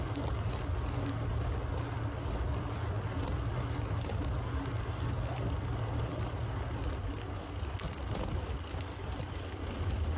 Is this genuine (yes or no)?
yes